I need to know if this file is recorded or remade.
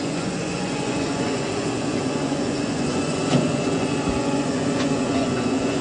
remade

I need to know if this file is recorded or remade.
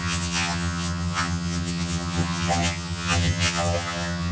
remade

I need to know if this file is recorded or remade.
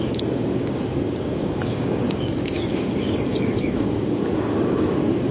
remade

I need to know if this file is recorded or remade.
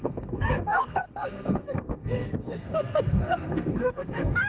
remade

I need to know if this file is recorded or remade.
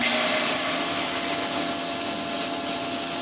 recorded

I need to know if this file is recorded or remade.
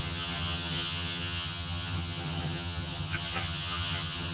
remade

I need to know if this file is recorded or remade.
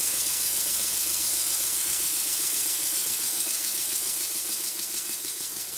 remade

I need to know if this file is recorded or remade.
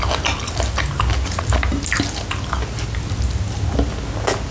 recorded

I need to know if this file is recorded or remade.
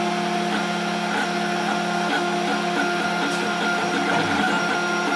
recorded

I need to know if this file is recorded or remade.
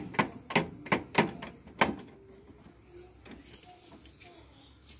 recorded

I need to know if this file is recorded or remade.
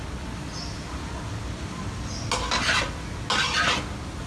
recorded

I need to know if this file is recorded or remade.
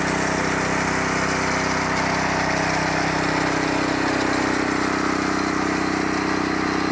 recorded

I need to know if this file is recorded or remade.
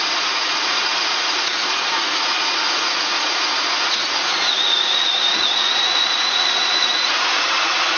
remade